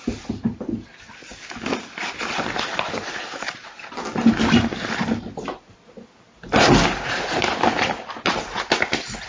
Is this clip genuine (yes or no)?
yes